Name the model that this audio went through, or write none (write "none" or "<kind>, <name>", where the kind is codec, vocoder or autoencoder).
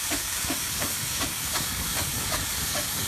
codec, DAC